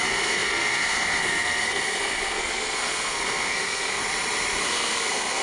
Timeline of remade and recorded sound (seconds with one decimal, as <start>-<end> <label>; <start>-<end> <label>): 0.0-4.0 remade; 4.0-4.6 recorded; 4.6-5.4 remade